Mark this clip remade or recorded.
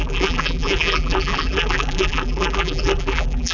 remade